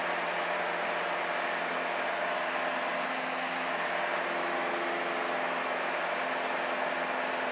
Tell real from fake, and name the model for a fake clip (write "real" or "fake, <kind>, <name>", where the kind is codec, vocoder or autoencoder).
real